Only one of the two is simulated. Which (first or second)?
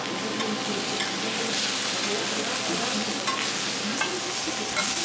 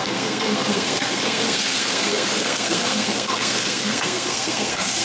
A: second